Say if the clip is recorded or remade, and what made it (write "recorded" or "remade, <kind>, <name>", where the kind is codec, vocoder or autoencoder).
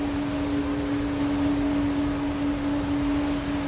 recorded